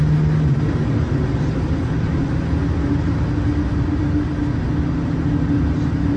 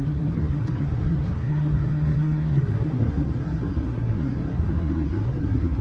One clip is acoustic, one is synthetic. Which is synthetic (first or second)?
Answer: second